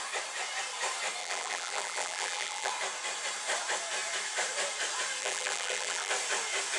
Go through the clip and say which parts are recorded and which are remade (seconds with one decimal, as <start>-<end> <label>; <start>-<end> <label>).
0.0-1.2 recorded; 1.2-2.7 remade; 2.7-5.2 recorded; 5.2-6.1 remade; 6.1-6.8 recorded